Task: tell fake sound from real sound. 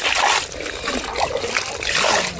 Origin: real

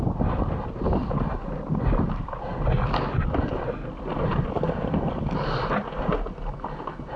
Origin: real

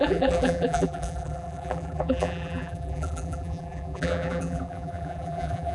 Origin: fake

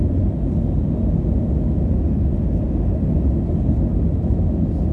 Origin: real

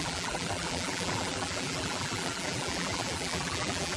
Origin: fake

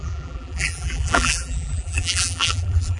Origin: fake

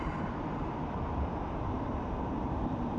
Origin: fake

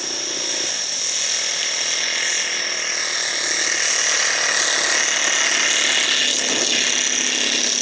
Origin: real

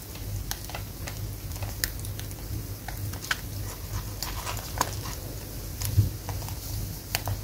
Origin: real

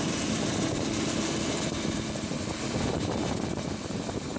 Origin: fake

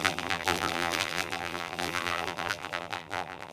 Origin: fake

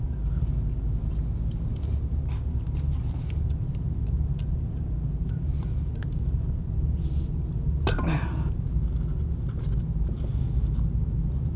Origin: real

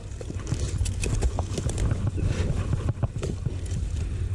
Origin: real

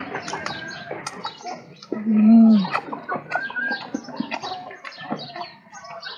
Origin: fake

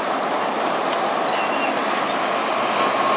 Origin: real